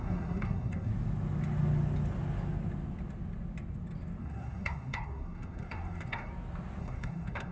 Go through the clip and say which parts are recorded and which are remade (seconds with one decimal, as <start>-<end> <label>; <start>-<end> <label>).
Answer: 0.0-0.9 remade; 0.9-4.2 recorded; 4.2-6.3 remade; 6.3-6.8 recorded; 6.8-7.5 remade